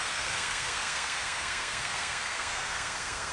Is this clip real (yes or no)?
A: no